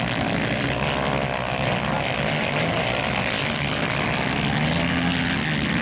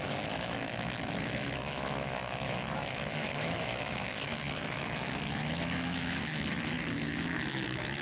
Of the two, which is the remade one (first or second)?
second